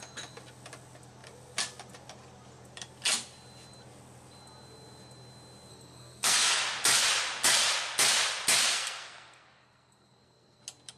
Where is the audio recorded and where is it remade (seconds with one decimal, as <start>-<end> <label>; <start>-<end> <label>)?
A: 0.0-5.7 recorded; 5.7-6.6 remade; 6.6-8.7 recorded; 8.7-10.6 remade; 10.6-11.0 recorded